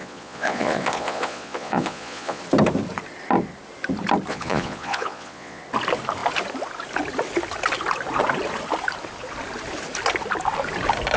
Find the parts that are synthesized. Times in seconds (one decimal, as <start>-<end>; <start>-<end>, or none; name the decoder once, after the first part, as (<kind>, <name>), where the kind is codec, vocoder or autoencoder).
0.0-2.4 (vocoder, Vocos); 4.3-5.6